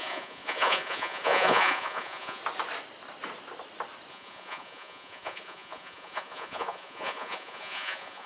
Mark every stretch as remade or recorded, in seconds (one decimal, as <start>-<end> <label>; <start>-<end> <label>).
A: 0.0-2.4 remade; 2.4-4.1 recorded; 4.1-8.3 remade